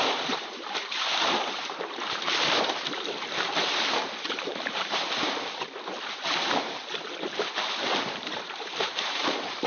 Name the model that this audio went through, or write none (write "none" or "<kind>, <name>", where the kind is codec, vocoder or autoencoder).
vocoder, BigVGAN v2